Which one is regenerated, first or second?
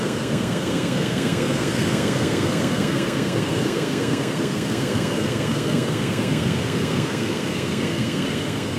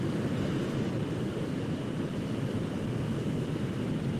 first